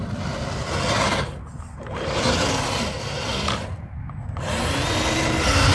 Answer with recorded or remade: recorded